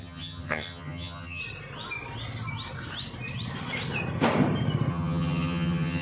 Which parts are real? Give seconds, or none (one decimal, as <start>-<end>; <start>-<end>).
1.4-4.9